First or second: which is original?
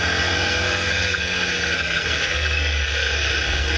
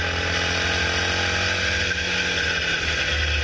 second